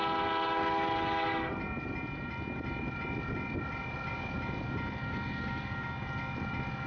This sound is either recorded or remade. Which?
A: recorded